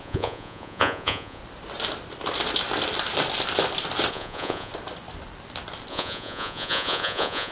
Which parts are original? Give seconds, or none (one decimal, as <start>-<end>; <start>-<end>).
1.4-4.1; 4.7-5.9